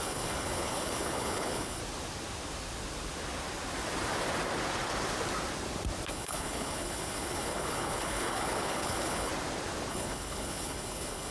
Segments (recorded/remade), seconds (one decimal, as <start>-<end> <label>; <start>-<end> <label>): 0.0-1.8 remade; 1.8-6.1 recorded; 6.1-9.3 remade; 9.3-9.9 recorded; 9.9-11.3 remade